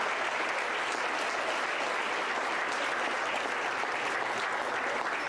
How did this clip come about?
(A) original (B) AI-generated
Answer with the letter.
A